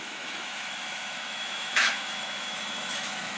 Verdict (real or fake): fake